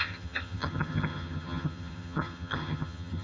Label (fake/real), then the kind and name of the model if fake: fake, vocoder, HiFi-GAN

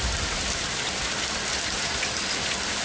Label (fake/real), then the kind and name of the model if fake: real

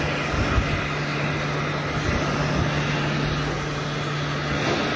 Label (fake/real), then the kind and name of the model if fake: real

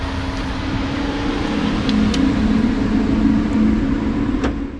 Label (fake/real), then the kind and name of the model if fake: real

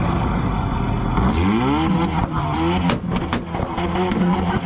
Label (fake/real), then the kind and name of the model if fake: real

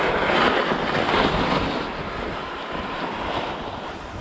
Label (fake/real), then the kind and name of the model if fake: real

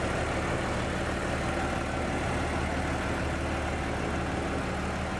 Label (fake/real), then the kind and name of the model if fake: real